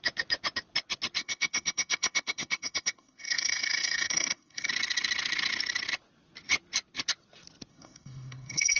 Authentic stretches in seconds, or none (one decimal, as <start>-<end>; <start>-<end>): 0.0-1.2; 4.7-7.7